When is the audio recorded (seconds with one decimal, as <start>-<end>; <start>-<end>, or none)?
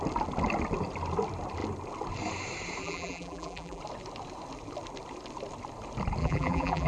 0.0-2.8; 3.8-6.2